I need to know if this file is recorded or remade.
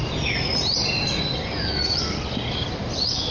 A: recorded